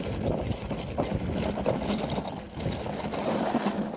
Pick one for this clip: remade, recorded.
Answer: recorded